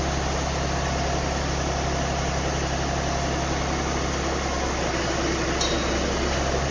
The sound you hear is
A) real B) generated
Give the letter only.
A